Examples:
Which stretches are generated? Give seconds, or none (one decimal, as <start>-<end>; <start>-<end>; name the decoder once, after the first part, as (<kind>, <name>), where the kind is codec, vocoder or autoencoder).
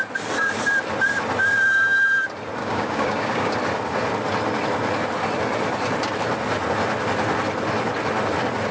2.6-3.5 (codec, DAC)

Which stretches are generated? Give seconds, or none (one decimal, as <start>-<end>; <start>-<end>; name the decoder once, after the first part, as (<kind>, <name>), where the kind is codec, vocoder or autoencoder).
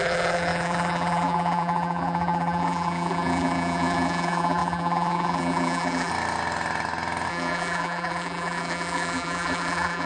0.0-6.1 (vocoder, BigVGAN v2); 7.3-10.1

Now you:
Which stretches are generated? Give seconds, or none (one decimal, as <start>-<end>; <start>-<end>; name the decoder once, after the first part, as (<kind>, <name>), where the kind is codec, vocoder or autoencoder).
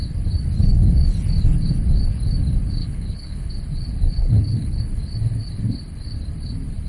2.8-3.5 (codec, HILCodec); 4.2-4.8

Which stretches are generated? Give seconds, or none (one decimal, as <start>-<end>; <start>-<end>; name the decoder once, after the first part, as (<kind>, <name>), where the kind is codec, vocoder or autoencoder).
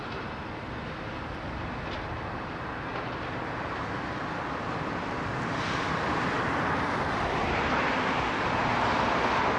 none